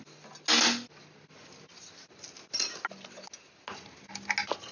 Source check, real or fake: real